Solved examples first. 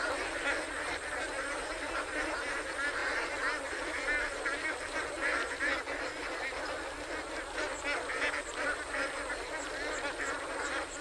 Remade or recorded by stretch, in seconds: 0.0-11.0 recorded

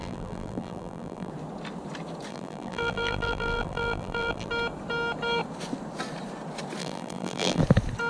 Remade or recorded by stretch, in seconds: 0.0-1.3 remade; 1.3-2.3 recorded; 2.3-4.5 remade; 4.5-6.8 recorded; 6.8-7.6 remade; 7.6-8.1 recorded

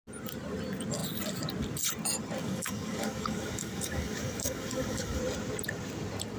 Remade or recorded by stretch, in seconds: 0.0-2.4 recorded; 2.4-5.2 remade; 5.2-6.4 recorded